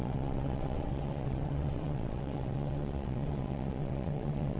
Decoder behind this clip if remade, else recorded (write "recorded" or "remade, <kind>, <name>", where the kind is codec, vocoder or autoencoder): remade, vocoder, WaveNeXt